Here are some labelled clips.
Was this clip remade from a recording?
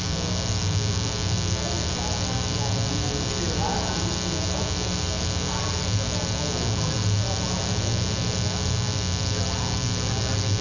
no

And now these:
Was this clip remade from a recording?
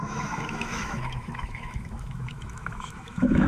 yes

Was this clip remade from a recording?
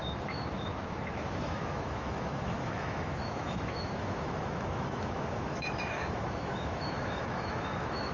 yes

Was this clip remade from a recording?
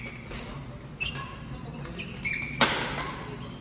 no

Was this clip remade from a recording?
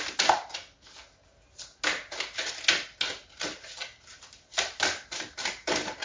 no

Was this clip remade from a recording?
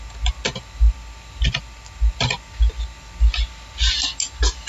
no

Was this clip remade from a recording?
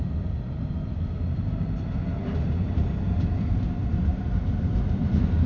no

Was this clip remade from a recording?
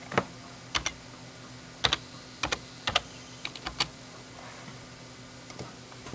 no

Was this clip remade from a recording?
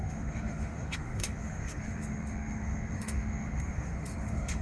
yes